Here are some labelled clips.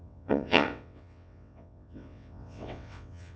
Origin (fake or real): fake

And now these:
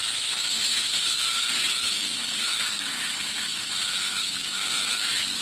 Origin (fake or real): fake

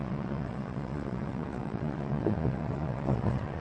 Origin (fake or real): fake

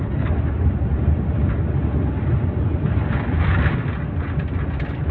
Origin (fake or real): real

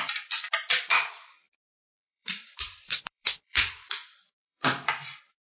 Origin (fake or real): fake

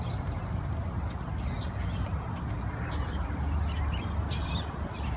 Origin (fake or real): real